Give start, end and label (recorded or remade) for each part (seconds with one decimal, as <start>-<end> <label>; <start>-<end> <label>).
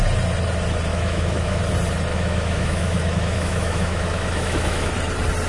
0.0-0.9 recorded; 0.9-1.6 remade; 1.6-2.1 recorded; 2.1-4.9 remade; 4.9-5.5 recorded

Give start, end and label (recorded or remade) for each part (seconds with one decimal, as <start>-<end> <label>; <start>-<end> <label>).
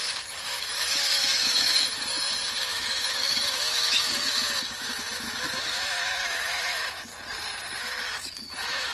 0.0-7.1 remade; 7.1-7.8 recorded; 7.8-8.9 remade